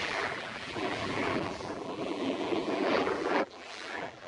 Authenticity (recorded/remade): remade